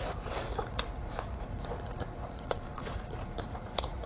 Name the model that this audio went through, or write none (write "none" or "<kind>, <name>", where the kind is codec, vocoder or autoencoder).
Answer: vocoder, Vocos